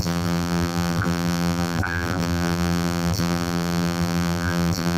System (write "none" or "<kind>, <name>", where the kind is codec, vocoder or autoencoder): vocoder, BigVGAN v2